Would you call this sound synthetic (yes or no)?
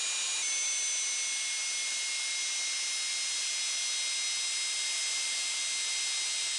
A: no